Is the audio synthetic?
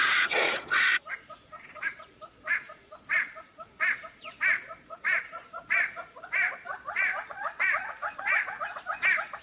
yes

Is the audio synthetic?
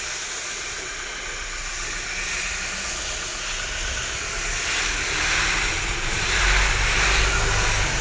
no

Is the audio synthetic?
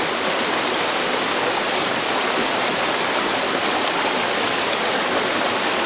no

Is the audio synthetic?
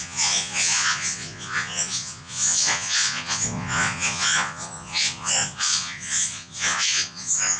yes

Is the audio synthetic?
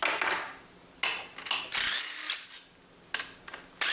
no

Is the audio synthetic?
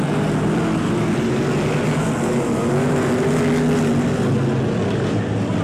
no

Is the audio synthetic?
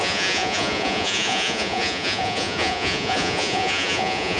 yes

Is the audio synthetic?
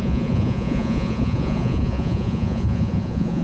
yes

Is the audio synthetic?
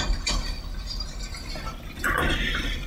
no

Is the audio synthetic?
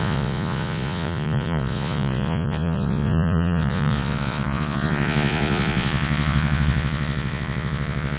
yes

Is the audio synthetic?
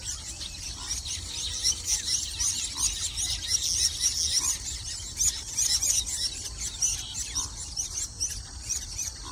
no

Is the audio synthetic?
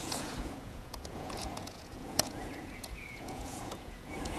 yes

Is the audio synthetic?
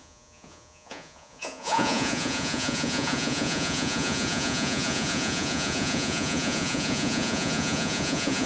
yes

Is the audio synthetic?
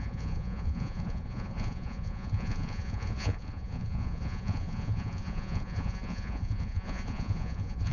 yes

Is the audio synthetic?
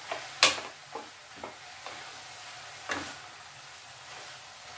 no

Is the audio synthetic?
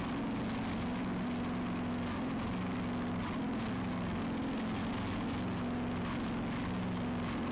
no